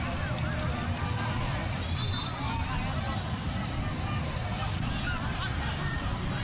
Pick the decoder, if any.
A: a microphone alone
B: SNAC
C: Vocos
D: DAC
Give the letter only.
A